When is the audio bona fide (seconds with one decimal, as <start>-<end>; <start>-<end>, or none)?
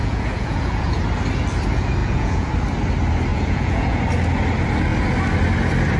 1.0-2.0; 2.5-3.3; 4.0-6.0